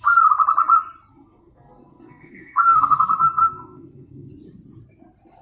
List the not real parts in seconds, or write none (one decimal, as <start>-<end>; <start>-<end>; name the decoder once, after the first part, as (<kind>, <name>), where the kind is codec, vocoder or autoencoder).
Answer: 1.1-4.3 (codec, SNAC)

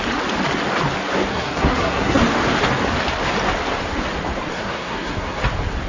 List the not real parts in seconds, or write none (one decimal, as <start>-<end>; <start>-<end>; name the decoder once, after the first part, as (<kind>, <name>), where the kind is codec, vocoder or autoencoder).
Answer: 1.3-2.2 (codec, SNAC); 4.5-5.4

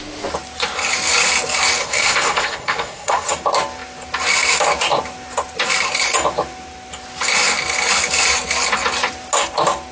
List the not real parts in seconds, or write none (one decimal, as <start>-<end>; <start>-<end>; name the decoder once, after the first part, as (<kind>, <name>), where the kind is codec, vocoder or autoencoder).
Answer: 1.8-3.3 (codec, SNAC)

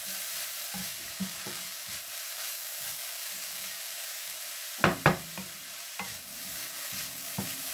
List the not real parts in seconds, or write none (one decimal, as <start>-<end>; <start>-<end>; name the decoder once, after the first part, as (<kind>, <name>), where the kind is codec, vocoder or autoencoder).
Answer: 0.8-1.9 (codec, DAC); 2.3-4.4; 6.1-7.7

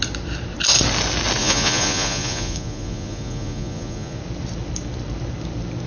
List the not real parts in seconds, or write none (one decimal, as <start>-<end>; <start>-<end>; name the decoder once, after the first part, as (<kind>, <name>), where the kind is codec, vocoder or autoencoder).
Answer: 1.4-4.2 (vocoder, Vocos)

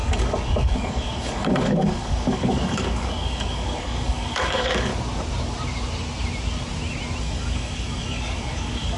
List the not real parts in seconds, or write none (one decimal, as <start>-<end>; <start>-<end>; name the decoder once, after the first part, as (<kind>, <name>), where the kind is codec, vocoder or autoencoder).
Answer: 0.0-4.9 (codec, DAC); 7.2-9.0

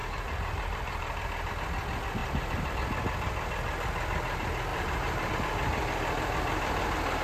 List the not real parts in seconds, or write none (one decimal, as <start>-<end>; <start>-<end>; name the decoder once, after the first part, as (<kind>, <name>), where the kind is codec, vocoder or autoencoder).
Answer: 0.0-1.5 (vocoder, BigVGAN v2); 2.2-2.7; 4.7-5.3

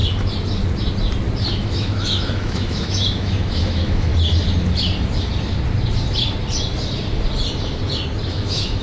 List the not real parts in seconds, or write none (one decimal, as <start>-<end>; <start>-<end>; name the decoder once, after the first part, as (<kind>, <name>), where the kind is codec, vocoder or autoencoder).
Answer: 1.5-4.1 (autoencoder, DAC-VAE); 8.3-8.8